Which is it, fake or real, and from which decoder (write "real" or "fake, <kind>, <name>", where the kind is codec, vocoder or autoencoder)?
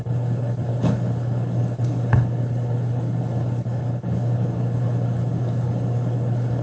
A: fake, codec, HILCodec